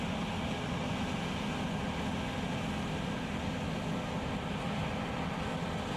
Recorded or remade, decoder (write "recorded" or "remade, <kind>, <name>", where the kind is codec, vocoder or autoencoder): recorded